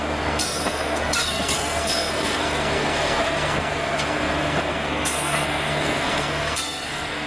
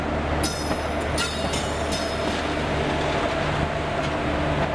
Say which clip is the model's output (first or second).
first